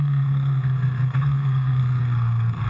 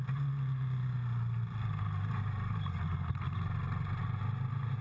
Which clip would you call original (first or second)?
second